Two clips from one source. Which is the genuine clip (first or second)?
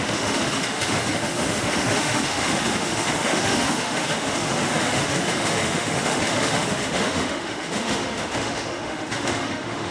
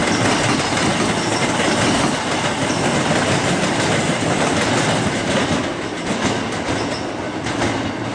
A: second